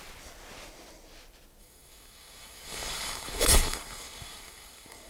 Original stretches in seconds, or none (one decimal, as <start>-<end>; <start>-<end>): 0.0-1.6